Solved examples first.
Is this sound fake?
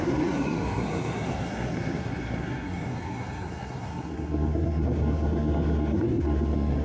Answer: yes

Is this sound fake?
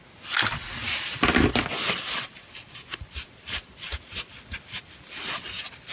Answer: no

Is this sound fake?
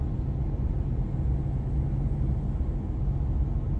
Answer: no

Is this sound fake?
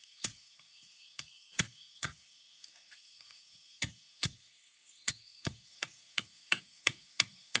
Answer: yes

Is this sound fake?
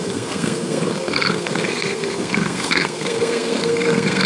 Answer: yes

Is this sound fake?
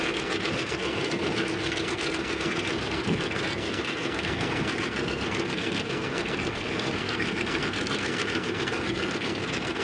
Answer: yes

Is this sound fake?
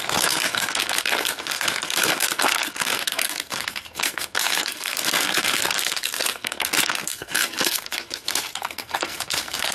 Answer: yes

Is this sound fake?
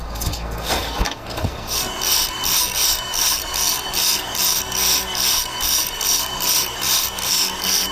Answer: yes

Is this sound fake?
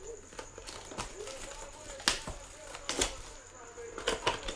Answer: no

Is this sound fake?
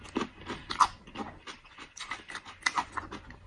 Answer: no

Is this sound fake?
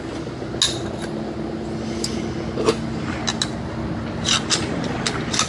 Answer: no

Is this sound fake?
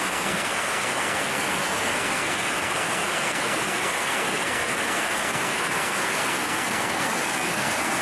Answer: yes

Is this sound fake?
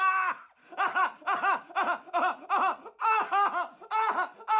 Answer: no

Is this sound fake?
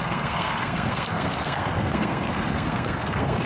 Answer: yes